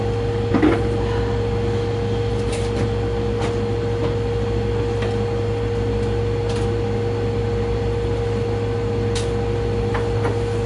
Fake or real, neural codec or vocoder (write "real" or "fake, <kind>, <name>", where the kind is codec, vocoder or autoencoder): real